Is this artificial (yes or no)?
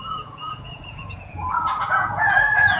yes